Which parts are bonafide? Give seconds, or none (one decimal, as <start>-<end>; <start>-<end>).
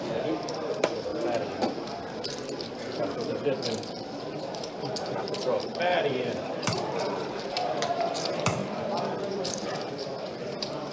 1.1-4.4; 8.6-9.3